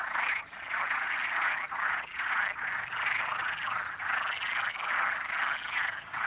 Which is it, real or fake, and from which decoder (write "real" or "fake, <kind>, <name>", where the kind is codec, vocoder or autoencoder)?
real